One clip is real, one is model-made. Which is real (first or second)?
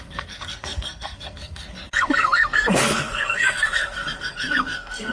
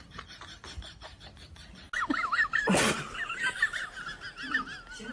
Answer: second